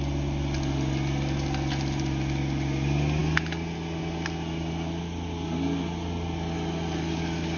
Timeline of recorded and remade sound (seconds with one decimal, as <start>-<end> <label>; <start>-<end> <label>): 0.0-7.6 recorded